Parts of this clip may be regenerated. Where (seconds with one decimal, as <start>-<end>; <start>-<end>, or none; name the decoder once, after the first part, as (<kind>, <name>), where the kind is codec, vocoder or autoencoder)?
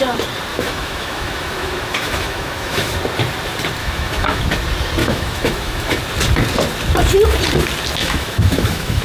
0.5-2.9 (autoencoder, DAC-VAE); 3.8-4.4; 5.0-6.0; 8.0-9.0